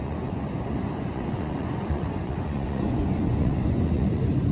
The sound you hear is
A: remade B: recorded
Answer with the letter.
A